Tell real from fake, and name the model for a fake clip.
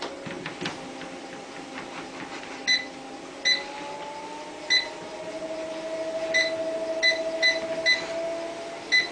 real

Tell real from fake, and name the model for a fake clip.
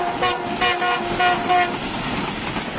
real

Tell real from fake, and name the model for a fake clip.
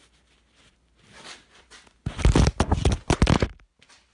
real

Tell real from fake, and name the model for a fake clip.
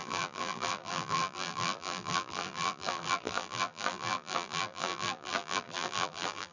fake, vocoder, BigVGAN v2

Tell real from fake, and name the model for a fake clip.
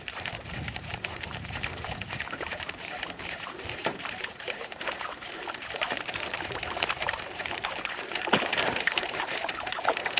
fake, vocoder, BigVGAN v2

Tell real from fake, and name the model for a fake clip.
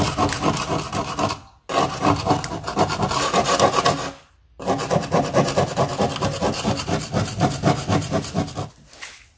real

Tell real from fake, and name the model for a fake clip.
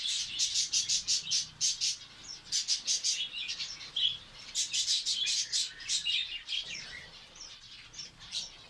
real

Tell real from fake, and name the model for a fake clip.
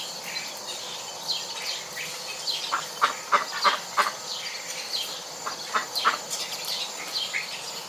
real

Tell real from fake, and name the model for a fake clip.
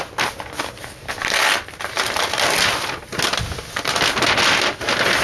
real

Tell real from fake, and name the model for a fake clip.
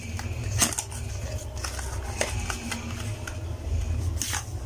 real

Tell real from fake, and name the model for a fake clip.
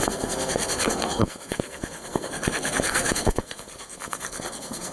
fake, codec, SNAC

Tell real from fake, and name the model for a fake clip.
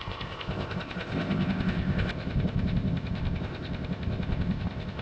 fake, codec, ZipCodec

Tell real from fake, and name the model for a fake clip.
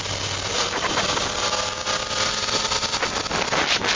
real